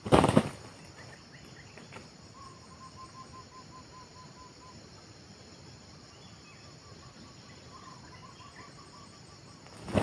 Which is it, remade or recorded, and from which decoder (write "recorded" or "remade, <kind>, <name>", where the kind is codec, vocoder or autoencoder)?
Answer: recorded